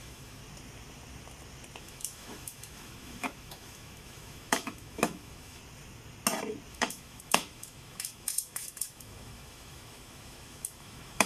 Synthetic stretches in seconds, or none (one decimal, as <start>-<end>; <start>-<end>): 0.0-0.4; 1.8-5.6; 6.7-11.3

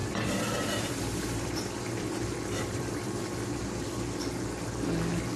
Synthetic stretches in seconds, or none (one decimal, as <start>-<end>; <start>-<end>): 0.0-3.2

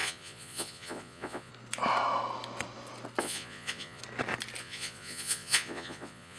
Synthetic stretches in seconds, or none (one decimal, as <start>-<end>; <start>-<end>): 0.0-1.5; 3.2-4.0; 4.6-6.4

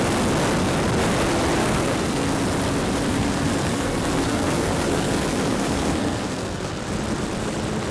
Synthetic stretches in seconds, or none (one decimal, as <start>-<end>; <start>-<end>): 1.6-2.4; 3.1-6.8

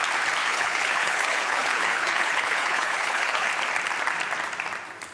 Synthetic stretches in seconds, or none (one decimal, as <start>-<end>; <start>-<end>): 0.4-3.5